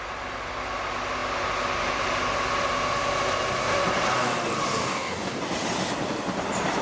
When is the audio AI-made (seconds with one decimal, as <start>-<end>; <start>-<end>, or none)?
4.8-5.4